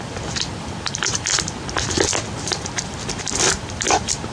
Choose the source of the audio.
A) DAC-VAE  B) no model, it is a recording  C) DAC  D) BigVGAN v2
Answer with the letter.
B